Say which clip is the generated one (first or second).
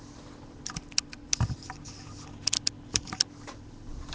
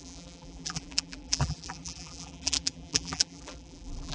second